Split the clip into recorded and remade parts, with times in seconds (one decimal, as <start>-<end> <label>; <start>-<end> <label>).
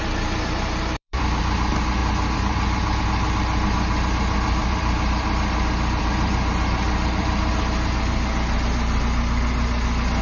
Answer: 0.0-1.4 remade; 1.4-2.0 recorded; 2.0-3.0 remade; 3.0-4.6 recorded; 4.6-7.5 remade; 7.5-10.2 recorded